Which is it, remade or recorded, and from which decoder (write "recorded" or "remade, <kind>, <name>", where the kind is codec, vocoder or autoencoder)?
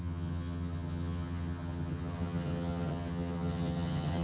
remade, vocoder, HiFi-GAN